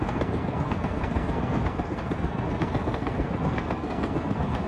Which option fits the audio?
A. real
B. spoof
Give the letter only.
B